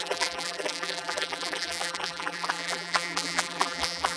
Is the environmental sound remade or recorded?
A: remade